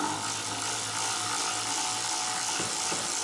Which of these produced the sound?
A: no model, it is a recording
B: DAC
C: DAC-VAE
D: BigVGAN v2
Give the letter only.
A